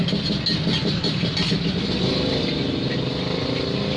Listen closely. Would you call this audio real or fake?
real